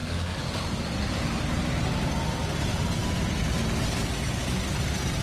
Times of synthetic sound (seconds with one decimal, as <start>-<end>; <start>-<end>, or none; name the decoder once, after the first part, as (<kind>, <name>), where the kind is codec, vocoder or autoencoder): none